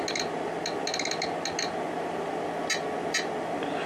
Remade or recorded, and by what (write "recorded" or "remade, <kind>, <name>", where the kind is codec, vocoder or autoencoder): recorded